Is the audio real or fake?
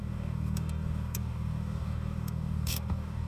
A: fake